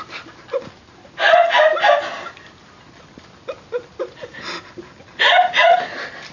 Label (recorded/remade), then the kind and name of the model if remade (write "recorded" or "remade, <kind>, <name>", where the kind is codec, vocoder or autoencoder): recorded